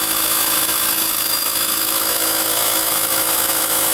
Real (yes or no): no